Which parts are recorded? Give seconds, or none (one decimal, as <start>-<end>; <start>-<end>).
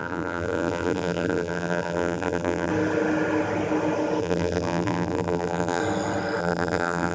2.7-4.2; 5.8-6.4